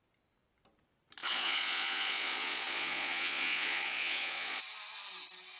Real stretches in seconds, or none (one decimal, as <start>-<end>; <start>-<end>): 0.0-1.2; 4.6-5.6